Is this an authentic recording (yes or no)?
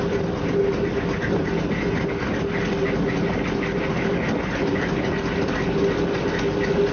yes